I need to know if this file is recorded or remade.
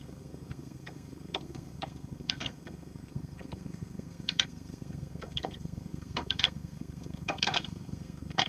remade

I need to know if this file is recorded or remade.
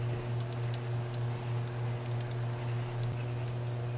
recorded